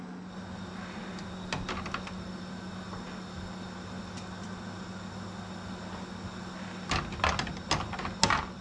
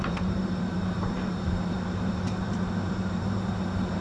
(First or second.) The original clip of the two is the first